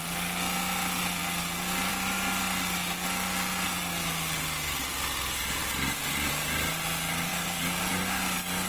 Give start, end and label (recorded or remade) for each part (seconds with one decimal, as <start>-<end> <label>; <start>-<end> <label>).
0.0-7.3 recorded; 7.3-7.9 remade; 7.9-8.7 recorded